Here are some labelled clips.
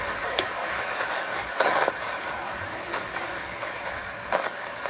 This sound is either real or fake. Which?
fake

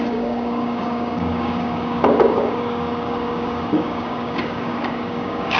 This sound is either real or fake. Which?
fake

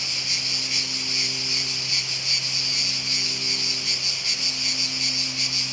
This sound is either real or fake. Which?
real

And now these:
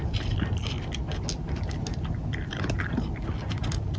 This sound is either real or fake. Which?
real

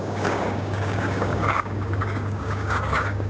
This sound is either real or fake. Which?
fake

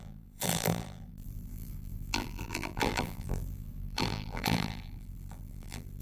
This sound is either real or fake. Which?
fake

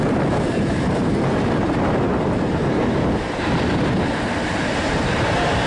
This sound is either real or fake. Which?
fake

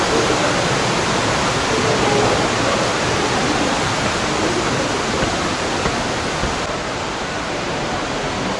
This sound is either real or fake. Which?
real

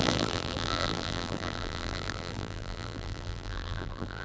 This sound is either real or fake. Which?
fake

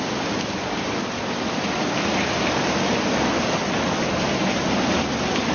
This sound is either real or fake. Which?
real